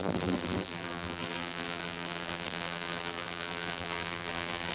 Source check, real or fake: fake